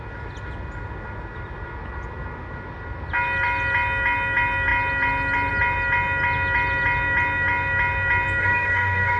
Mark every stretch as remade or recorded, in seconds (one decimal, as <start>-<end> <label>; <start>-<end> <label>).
0.0-8.4 recorded; 8.4-9.2 remade